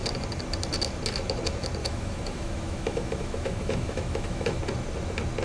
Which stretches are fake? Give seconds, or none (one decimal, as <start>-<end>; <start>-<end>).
1.8-4.6